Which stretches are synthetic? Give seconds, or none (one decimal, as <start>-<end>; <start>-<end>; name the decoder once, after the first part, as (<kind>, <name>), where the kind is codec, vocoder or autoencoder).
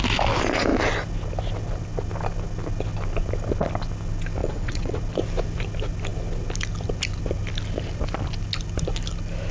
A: 4.4-5.0 (vocoder, WaveNeXt)